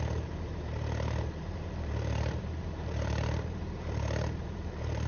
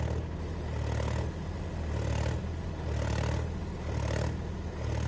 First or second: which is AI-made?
first